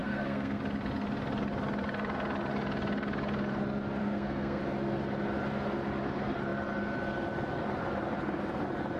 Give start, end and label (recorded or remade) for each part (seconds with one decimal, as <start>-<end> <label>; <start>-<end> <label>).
0.0-0.6 remade; 0.6-4.0 recorded; 4.0-4.6 remade; 4.6-9.0 recorded